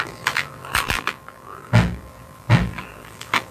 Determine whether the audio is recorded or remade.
remade